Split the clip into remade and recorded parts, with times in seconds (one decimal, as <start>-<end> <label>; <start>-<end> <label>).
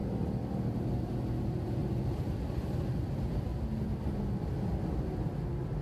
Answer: 0.0-5.8 recorded